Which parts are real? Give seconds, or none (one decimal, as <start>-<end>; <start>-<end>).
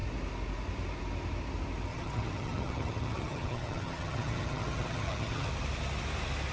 0.0-1.9; 5.5-6.5